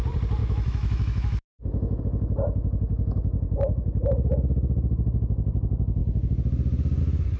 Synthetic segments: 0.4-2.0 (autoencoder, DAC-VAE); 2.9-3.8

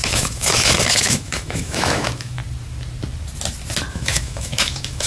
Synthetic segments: 0.0-2.4 (autoencoder, DAC-VAE); 3.9-5.1

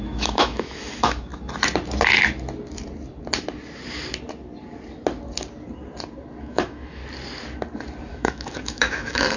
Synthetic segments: 0.0-1.3 (autoencoder, DAC-VAE); 6.4-7.0; 8.1-9.4

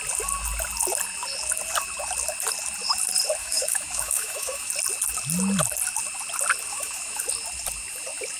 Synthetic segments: 3.4-4.7 (autoencoder, DAC-VAE); 6.7-7.2

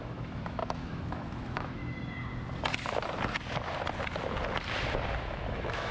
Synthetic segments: 0.0-1.8 (autoencoder, DAC-VAE); 5.2-5.9